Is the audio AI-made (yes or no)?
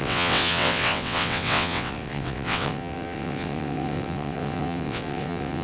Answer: yes